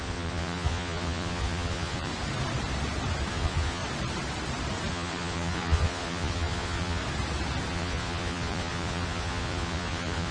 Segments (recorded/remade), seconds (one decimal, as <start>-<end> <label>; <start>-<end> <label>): 0.0-2.1 remade; 2.1-3.3 recorded; 3.3-3.8 remade; 3.8-4.9 recorded; 4.9-7.0 remade; 7.0-7.7 recorded; 7.7-10.3 remade